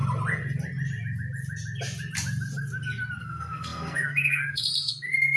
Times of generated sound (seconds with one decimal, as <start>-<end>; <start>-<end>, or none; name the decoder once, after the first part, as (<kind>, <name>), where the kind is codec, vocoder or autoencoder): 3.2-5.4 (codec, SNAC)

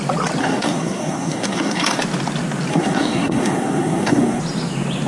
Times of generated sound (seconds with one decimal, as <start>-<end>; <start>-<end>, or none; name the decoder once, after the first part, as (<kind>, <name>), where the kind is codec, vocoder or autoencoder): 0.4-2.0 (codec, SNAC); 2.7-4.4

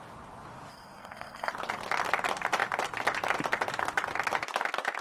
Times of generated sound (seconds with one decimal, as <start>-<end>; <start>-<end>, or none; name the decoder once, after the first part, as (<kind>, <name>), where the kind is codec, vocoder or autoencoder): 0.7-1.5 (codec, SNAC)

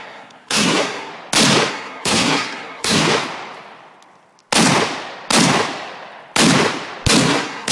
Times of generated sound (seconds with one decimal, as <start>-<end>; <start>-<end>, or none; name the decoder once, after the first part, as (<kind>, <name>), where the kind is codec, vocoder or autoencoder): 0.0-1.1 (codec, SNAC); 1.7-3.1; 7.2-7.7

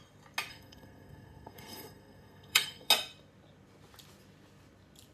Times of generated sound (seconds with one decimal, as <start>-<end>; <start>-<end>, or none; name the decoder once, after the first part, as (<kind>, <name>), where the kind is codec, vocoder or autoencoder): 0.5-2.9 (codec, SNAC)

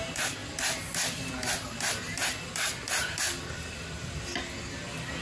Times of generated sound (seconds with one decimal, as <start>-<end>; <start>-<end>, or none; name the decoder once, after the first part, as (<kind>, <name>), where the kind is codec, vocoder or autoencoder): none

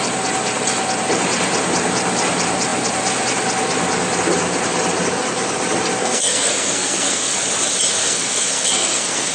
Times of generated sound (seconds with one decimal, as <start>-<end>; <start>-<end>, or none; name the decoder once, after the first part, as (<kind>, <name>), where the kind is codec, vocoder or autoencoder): 6.0-7.4 (codec, SNAC); 8.0-9.3

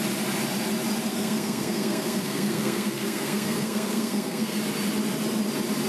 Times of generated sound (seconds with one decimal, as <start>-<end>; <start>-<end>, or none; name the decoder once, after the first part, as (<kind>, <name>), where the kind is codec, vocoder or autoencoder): 1.1-4.6 (codec, SNAC)